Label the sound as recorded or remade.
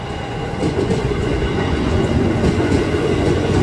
remade